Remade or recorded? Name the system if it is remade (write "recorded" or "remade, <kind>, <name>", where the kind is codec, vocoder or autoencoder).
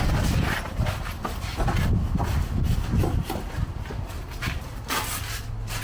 remade, vocoder, BigVGAN v2